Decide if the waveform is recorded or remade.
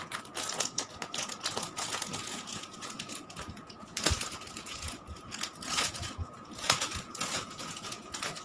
remade